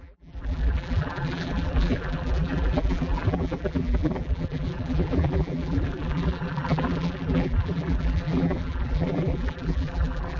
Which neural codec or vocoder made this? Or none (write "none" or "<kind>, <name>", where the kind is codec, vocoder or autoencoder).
vocoder, BigVGAN v2